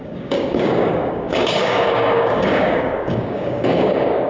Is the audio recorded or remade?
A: remade